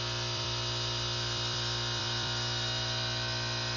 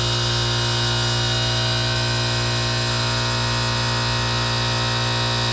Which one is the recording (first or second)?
second